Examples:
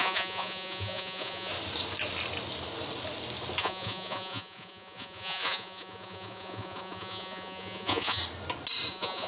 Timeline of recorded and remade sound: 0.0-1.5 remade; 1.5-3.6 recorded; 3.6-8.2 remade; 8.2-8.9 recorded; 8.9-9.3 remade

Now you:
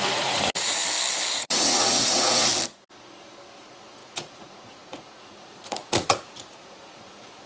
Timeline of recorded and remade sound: 0.0-0.8 remade; 0.8-1.3 recorded; 1.3-2.5 remade; 2.5-3.6 recorded; 3.6-7.5 remade

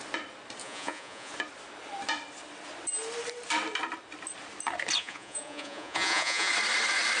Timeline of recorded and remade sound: 0.0-0.6 recorded; 0.6-1.3 remade; 1.3-5.0 recorded; 5.0-6.5 remade; 6.5-7.2 recorded

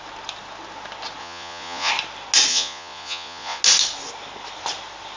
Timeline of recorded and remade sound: 0.0-1.2 recorded; 1.2-1.9 remade; 1.9-2.5 recorded; 2.5-3.6 remade; 3.6-5.2 recorded

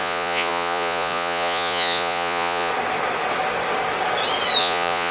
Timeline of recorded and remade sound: 0.0-2.7 remade; 2.7-4.6 recorded; 4.6-5.1 remade

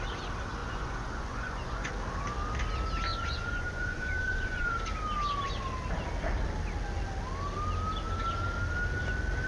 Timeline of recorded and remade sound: 0.0-0.6 recorded; 0.6-1.9 remade; 1.9-3.1 recorded; 3.1-4.8 remade; 4.8-9.5 recorded

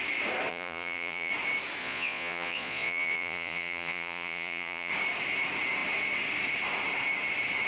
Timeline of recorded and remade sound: 0.0-0.5 recorded; 0.5-1.3 remade; 1.3-1.8 recorded; 1.8-4.9 remade; 4.9-7.7 recorded

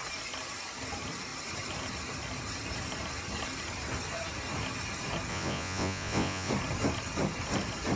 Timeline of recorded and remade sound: 0.0-5.3 recorded; 5.3-6.5 remade; 6.5-8.0 recorded